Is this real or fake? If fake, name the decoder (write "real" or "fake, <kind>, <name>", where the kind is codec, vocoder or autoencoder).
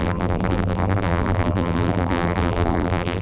fake, vocoder, BigVGAN v2